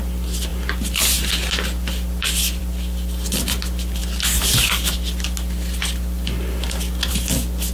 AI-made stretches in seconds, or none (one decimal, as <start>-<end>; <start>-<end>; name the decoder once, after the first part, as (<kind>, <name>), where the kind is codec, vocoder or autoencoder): none